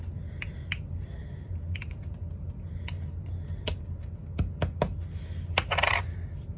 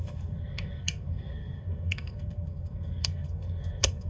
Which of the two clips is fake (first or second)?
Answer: second